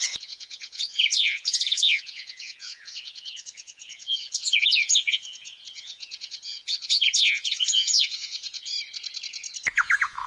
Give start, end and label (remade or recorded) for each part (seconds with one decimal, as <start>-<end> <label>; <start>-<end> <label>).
0.0-8.7 remade; 8.7-9.7 recorded; 9.7-10.3 remade

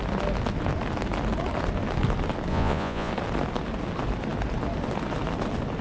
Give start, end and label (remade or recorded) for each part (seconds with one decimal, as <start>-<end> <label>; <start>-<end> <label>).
0.0-2.5 recorded; 2.5-3.1 remade; 3.1-5.8 recorded

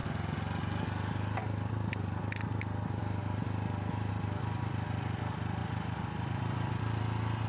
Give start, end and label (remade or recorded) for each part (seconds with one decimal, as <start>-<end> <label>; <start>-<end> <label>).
0.0-7.5 recorded

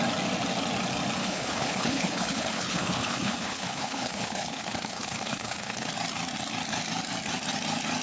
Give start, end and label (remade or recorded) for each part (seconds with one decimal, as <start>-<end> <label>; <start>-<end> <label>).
0.0-1.2 recorded; 1.2-5.9 remade; 5.9-8.0 recorded

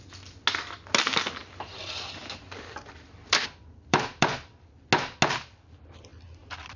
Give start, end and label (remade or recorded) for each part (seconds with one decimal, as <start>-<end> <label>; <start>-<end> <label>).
0.0-1.4 recorded; 1.4-2.8 remade; 2.8-3.2 recorded; 3.2-4.8 remade; 4.8-6.1 recorded; 6.1-6.8 remade

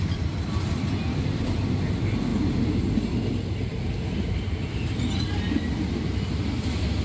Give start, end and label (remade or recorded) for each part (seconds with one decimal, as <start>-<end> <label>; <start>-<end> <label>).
0.0-7.0 recorded

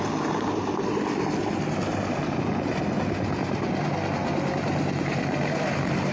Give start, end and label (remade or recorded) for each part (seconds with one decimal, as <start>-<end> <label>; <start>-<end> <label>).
0.0-6.1 recorded